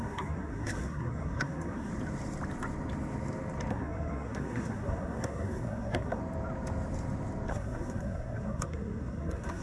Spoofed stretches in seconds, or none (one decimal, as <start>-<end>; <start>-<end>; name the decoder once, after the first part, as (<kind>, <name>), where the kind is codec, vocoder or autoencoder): 0.0-1.9 (codec, SNAC); 3.7-6.2; 7.5-9.6

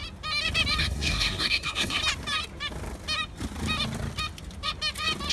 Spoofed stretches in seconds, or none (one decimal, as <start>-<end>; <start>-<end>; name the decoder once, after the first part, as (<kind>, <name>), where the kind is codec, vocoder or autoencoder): 0.8-2.0 (codec, SNAC)

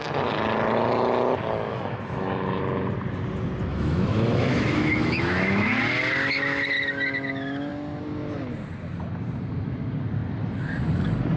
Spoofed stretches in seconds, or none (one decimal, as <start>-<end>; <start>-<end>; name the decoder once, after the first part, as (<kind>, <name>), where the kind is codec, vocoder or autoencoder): 1.7-2.6 (autoencoder, DAC-VAE); 3.7-5.8

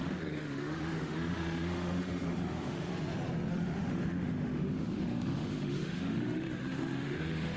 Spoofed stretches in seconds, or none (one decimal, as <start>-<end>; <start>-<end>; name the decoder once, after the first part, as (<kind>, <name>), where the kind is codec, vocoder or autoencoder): 0.0-2.9 (autoencoder, DAC-VAE); 3.5-7.6

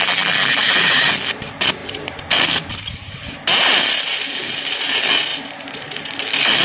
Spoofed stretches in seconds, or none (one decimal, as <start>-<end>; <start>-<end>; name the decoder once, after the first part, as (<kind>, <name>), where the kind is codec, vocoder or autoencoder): none

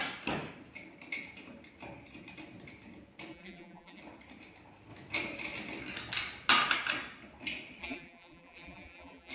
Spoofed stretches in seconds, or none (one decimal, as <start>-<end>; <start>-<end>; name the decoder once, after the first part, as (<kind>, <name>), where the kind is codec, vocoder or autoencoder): 3.3-4.0 (vocoder, BigVGAN v2); 7.8-9.3

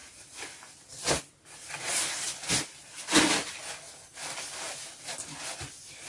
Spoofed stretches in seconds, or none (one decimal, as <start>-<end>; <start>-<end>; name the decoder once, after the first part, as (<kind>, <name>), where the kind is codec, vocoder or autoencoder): none